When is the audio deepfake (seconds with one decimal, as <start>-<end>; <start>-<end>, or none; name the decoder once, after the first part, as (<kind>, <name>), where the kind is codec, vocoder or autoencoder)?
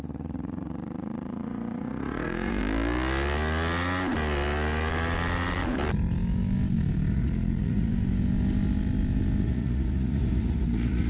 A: 0.0-2.6 (vocoder, Vocos); 7.1-7.9; 9.4-11.1